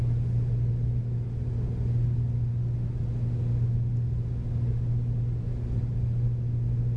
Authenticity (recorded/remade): recorded